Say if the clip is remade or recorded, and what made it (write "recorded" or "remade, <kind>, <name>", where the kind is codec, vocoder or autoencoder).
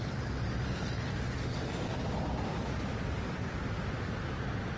recorded